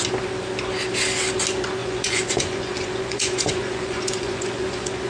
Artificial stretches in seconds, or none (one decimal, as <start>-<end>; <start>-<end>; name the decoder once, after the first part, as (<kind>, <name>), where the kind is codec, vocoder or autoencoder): 1.8-5.1 (vocoder, Vocos)